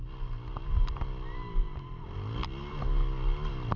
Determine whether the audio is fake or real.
real